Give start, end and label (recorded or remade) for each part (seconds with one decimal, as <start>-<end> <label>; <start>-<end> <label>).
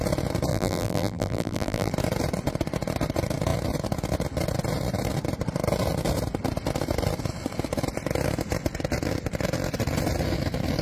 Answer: 0.0-0.5 recorded; 0.5-1.9 remade; 1.9-10.8 recorded